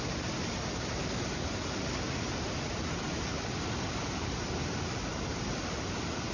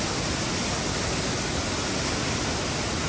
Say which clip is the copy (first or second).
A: first